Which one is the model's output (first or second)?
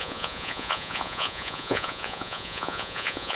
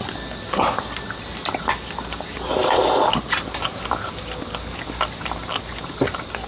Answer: first